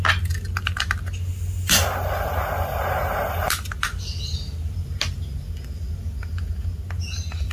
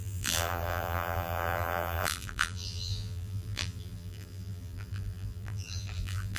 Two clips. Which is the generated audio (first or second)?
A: second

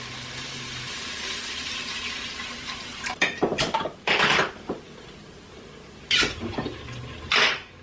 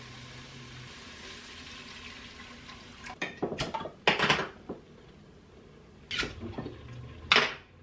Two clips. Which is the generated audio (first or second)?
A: first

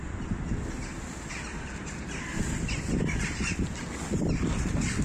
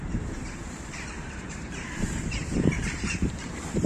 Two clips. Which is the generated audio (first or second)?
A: second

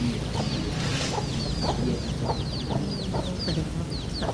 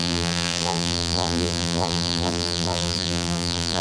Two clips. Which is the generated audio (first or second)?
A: second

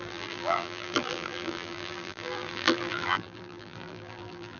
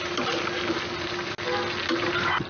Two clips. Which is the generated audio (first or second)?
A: first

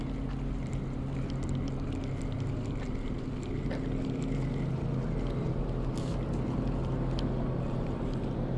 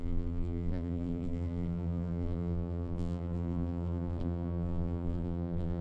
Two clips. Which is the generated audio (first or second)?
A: second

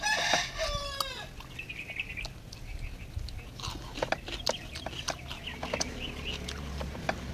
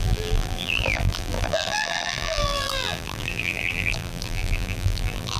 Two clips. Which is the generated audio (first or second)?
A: second